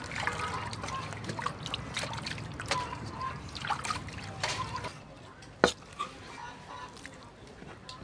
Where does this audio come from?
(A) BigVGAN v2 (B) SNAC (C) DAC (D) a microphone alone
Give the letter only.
D